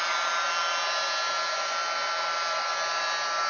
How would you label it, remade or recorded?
recorded